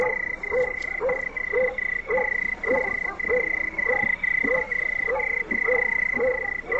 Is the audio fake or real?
real